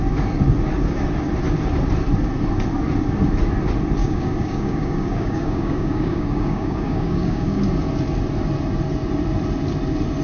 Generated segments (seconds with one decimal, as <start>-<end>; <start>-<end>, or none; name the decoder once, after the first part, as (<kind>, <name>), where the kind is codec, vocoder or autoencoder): 4.0-7.6 (codec, DAC)